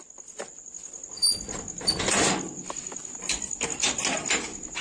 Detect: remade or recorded recorded